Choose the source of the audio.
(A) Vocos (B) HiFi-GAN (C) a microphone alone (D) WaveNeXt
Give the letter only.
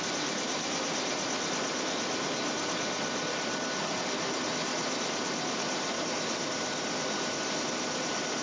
C